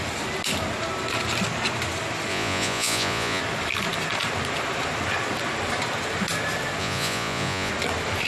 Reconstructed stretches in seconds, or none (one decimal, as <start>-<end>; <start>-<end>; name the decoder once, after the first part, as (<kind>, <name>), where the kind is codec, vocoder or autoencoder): 2.3-3.4 (vocoder, Vocos); 6.8-7.7